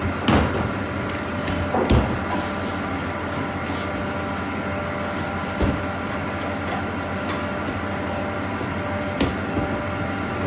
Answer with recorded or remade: recorded